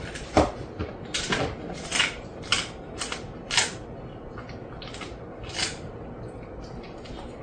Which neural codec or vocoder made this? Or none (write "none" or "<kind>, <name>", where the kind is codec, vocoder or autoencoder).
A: none